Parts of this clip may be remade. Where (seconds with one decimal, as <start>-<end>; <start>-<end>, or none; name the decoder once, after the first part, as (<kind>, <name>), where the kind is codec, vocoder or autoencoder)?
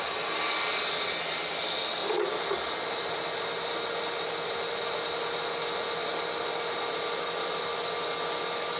none